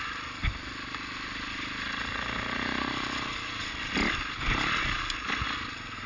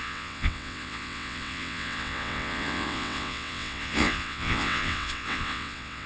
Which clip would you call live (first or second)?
first